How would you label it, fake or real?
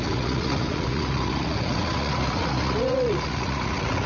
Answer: fake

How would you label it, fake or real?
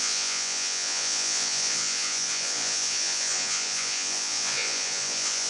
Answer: fake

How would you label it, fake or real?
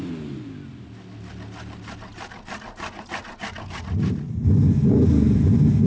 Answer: real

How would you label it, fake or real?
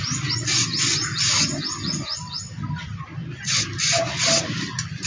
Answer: real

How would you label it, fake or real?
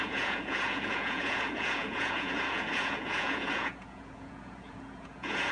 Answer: fake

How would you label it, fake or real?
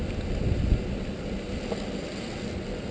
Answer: real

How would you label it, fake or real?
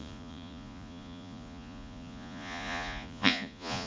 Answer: fake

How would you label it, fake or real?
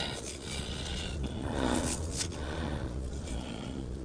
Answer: fake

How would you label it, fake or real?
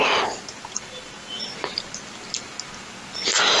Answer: real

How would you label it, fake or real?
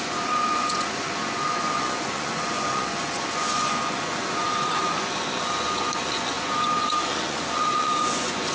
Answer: fake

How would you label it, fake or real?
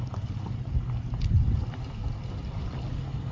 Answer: real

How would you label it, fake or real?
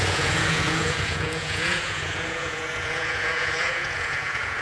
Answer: fake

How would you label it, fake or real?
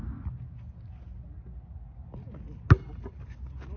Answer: real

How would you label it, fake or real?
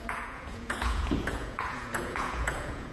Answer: fake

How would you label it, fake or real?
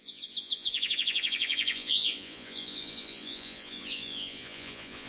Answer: fake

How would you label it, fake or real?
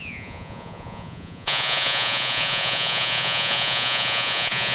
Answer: fake